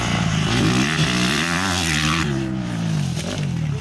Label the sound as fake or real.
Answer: real